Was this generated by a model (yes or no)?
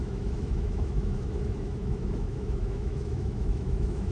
yes